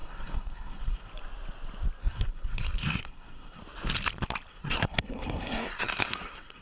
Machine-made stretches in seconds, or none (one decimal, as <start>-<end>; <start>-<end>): 0.0-1.1; 2.0-3.6; 4.5-6.6